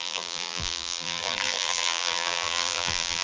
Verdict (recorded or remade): remade